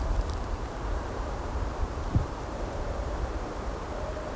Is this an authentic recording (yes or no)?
no